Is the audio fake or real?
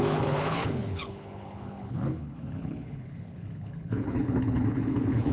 fake